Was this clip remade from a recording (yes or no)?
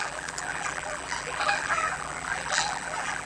yes